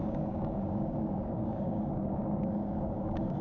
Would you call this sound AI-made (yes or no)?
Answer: yes